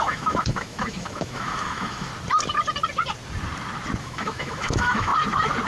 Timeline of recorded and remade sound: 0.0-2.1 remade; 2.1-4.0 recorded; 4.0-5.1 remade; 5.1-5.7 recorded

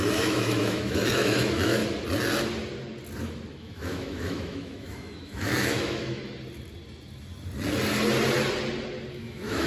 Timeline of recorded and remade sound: 0.0-1.8 remade; 1.8-3.5 recorded; 3.5-6.2 remade; 6.2-9.1 recorded; 9.1-9.7 remade

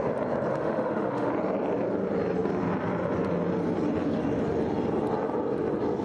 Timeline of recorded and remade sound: 0.0-0.5 recorded; 0.5-1.3 remade; 1.3-6.0 recorded